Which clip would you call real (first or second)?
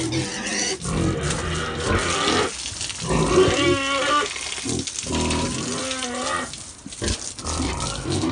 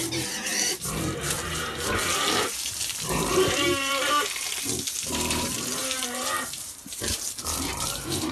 first